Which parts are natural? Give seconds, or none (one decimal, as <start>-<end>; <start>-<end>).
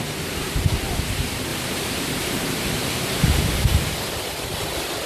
0.0-1.5; 3.4-5.1